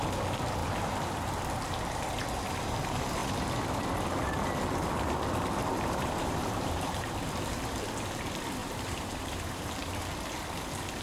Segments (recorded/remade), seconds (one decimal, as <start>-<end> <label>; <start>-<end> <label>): 0.0-0.6 recorded; 0.6-1.3 remade; 1.3-5.6 recorded; 5.6-7.1 remade; 7.1-8.6 recorded; 8.6-10.0 remade; 10.0-11.0 recorded